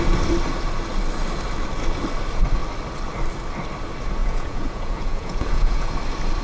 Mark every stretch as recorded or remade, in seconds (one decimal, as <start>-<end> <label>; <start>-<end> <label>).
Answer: 0.0-4.2 recorded; 4.2-5.9 remade; 5.9-6.4 recorded